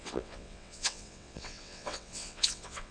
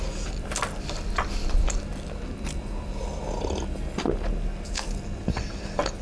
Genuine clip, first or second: second